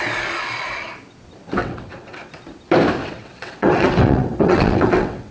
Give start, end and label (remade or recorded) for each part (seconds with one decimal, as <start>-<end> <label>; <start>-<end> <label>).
0.0-1.6 recorded; 1.6-2.3 remade; 2.3-3.0 recorded; 3.0-5.3 remade